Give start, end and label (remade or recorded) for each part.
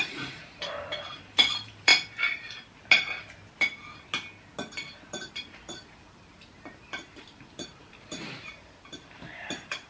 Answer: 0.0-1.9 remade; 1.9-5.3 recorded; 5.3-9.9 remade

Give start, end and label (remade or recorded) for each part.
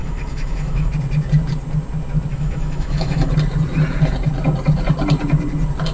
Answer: 0.0-0.9 remade; 0.9-2.3 recorded; 2.3-3.3 remade; 3.3-5.9 recorded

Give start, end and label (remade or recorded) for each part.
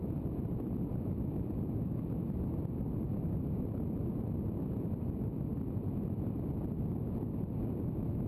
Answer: 0.0-8.3 recorded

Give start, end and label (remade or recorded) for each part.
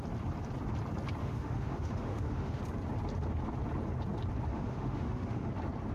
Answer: 0.0-1.2 recorded; 1.2-2.6 remade; 2.6-4.5 recorded; 4.5-5.5 remade; 5.5-5.9 recorded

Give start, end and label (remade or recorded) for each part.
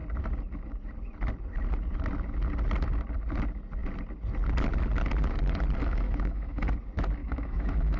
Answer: 0.0-5.8 recorded; 5.8-6.7 remade; 6.7-7.2 recorded; 7.2-8.0 remade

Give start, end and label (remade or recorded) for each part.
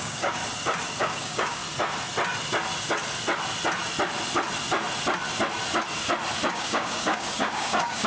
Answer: 0.0-0.4 remade; 0.4-1.0 recorded; 1.0-1.6 remade; 1.6-6.5 recorded; 6.5-8.1 remade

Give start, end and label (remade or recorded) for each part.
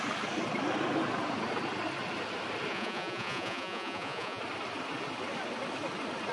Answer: 0.0-2.7 recorded; 2.7-4.4 remade; 4.4-6.3 recorded